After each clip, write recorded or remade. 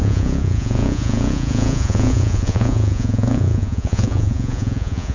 remade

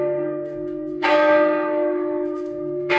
remade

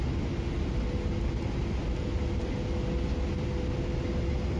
recorded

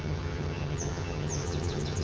remade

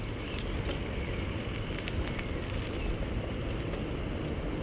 recorded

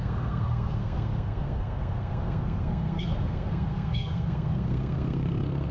remade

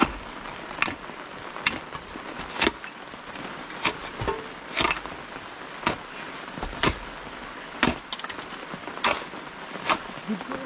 recorded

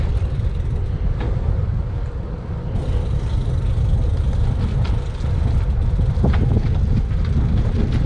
recorded